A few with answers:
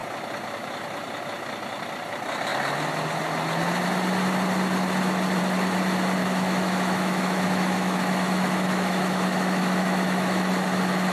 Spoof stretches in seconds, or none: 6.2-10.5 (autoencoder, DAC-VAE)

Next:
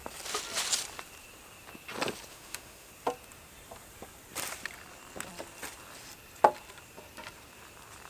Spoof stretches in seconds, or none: 2.3-2.9 (autoencoder, DAC-VAE)

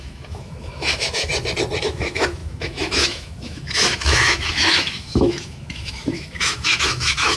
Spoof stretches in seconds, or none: 0.0-1.3 (autoencoder, DAC-VAE); 1.8-7.4

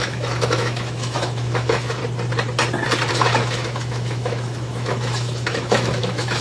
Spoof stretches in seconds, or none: 0.0-2.0 (autoencoder, DAC-VAE); 3.1-6.4

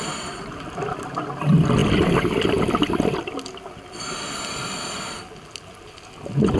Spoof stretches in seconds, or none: none

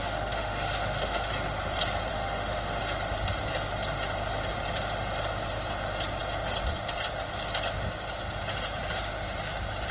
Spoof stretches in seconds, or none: 0.0-1.3 (autoencoder, DAC-VAE); 2.1-2.8

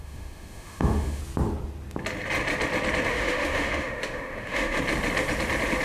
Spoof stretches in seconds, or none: 0.0-1.2 (autoencoder, DAC-VAE); 3.1-4.8